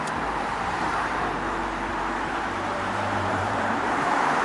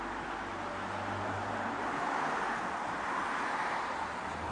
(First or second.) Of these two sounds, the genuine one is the second